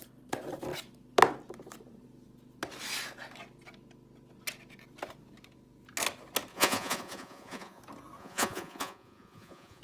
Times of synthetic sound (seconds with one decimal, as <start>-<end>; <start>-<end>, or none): 6.5-7.8; 8.2-9.8

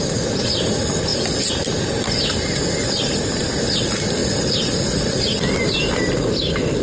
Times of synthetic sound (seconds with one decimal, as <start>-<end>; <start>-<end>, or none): none

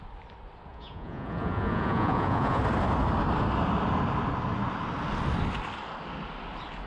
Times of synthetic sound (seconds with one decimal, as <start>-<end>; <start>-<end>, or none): 0.7-2.6